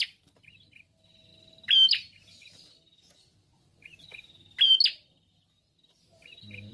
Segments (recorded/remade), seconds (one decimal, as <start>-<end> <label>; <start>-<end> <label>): 0.0-6.7 recorded